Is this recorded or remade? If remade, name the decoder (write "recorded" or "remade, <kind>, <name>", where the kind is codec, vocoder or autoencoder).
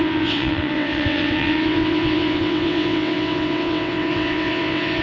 remade, vocoder, WaveNeXt